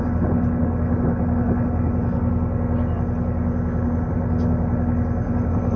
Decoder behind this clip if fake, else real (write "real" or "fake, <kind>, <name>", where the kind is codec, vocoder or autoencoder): real